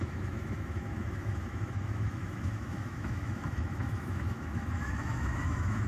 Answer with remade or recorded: remade